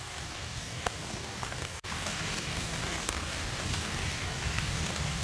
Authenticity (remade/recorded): remade